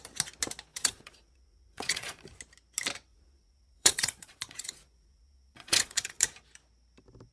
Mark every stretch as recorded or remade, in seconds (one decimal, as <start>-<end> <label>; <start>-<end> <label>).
0.0-0.7 recorded; 0.7-2.2 remade; 2.2-3.1 recorded; 3.1-6.2 remade; 6.2-7.3 recorded